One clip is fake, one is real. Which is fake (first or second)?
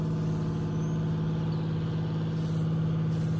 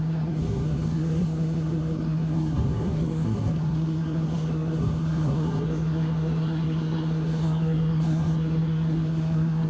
second